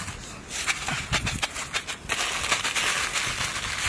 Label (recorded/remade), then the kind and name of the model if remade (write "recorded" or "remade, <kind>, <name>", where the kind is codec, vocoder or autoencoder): recorded